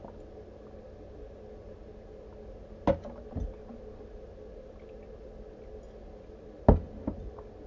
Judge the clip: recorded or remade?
recorded